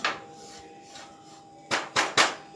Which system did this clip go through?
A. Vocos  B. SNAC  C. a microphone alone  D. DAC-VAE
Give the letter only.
C